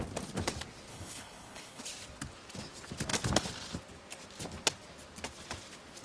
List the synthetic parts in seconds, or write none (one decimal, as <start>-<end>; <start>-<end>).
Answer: 0.9-1.8